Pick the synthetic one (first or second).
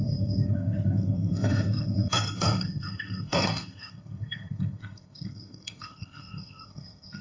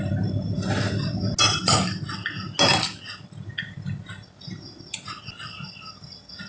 first